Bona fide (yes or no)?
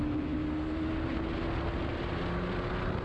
yes